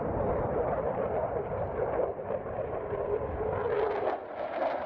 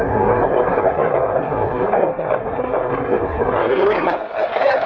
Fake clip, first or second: second